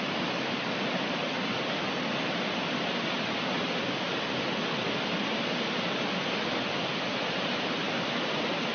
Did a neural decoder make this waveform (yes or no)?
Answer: no